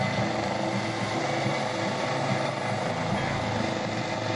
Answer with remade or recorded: recorded